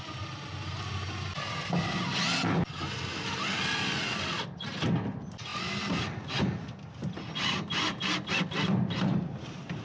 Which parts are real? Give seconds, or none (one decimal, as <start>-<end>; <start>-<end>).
0.0-9.8